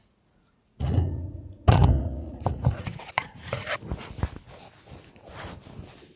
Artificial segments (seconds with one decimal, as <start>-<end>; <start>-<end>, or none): 0.0-3.7